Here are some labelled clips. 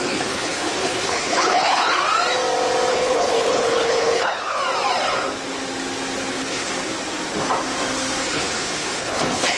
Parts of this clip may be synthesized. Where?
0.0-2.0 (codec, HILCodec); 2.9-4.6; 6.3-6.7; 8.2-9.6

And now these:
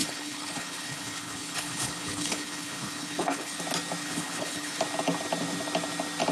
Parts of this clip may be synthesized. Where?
0.0-3.6 (codec, HILCodec); 4.0-4.8

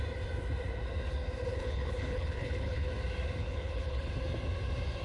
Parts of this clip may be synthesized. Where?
1.5-2.9 (codec, HILCodec); 3.4-4.1

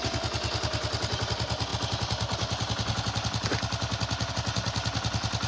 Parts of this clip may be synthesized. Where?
none